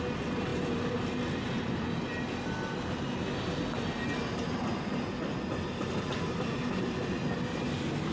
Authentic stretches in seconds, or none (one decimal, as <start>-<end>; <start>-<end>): 0.0-8.1